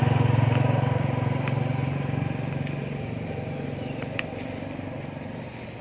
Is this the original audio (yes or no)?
yes